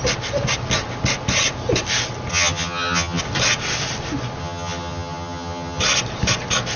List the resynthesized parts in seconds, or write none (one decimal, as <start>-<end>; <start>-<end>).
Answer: 2.3-3.2; 4.4-5.8